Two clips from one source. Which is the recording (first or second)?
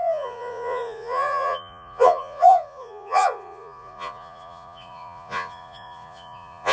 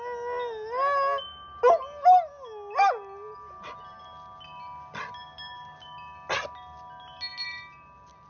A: second